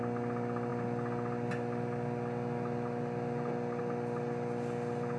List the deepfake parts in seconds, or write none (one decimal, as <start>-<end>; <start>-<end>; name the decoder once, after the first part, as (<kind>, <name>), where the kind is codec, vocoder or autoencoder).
none